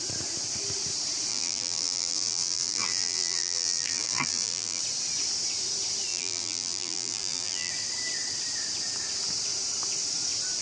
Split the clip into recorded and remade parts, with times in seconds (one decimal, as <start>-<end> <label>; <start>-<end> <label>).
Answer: 0.0-1.3 recorded; 1.3-4.8 remade; 4.8-6.1 recorded; 6.1-7.7 remade; 7.7-10.6 recorded